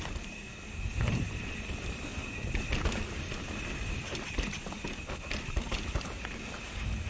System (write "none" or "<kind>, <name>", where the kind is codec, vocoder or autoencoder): vocoder, BigVGAN v2